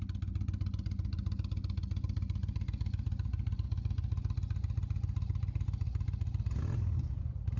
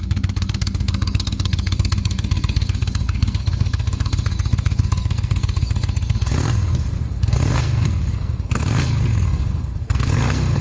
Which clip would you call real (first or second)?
first